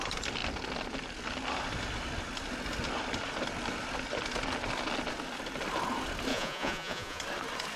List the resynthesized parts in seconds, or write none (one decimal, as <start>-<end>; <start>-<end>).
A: 6.3-7.2